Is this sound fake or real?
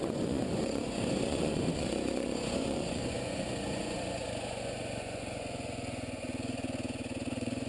fake